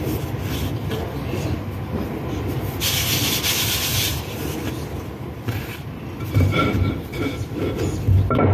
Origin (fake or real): real